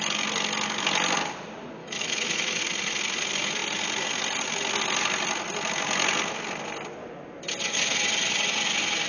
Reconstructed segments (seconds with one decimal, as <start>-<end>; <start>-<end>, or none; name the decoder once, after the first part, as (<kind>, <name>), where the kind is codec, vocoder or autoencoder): 1.8-2.6 (autoencoder, DAC-VAE)